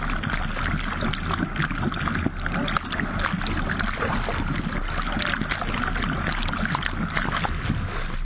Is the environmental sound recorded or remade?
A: recorded